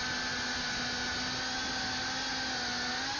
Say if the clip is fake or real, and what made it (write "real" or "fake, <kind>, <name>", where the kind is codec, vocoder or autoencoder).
real